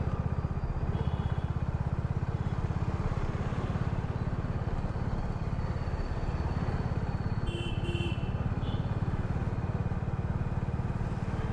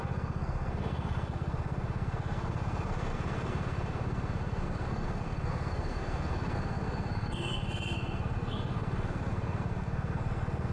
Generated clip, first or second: second